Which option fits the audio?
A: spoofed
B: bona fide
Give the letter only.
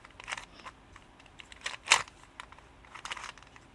B